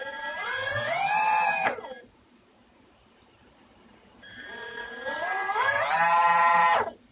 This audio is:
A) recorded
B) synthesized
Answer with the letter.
B